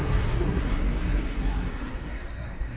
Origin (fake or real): fake